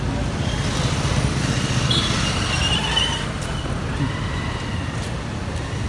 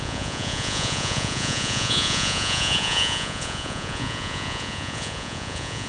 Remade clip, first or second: second